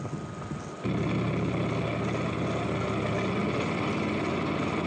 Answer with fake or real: real